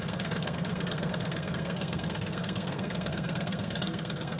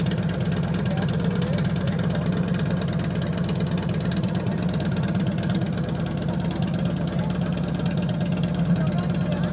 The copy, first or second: first